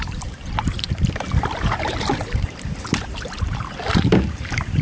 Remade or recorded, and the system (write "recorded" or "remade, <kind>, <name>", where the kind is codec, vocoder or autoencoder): remade, vocoder, BigVGAN v2